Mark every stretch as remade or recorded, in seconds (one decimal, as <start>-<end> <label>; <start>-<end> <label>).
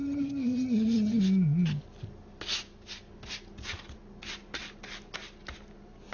0.0-1.2 remade; 1.2-6.1 recorded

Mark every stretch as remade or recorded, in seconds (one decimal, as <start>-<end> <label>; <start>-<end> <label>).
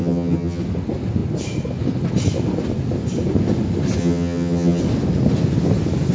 0.0-0.6 remade; 0.6-4.0 recorded; 4.0-4.8 remade; 4.8-6.1 recorded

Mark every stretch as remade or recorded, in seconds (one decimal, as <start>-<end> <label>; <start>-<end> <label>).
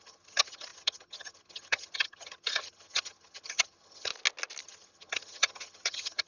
0.0-4.1 remade; 4.1-4.6 recorded; 4.6-6.3 remade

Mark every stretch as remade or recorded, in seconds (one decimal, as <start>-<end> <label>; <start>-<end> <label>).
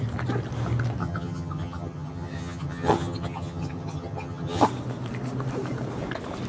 0.0-1.0 recorded; 1.0-4.6 remade; 4.6-6.5 recorded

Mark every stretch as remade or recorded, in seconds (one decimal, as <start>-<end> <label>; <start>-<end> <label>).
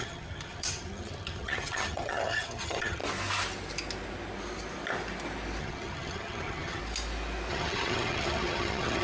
0.0-3.0 remade; 3.0-5.6 recorded; 5.6-6.8 remade; 6.8-7.5 recorded; 7.5-9.0 remade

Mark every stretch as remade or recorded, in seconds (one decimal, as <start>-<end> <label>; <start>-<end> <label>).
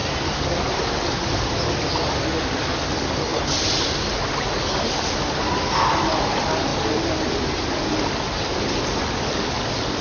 0.0-10.0 recorded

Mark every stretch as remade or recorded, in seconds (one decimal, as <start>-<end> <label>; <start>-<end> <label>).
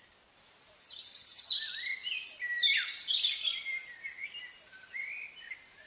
0.0-0.8 recorded; 0.8-1.5 remade; 1.5-5.9 recorded